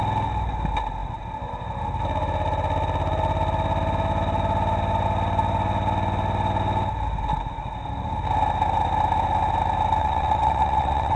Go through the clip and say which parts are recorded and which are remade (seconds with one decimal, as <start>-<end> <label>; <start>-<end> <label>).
0.0-10.0 recorded; 10.0-11.2 remade